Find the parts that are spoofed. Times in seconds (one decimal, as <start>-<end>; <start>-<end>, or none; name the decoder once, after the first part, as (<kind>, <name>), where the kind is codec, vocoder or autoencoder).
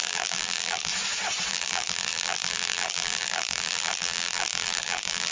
0.0-0.9 (vocoder, BigVGAN v2); 1.5-5.3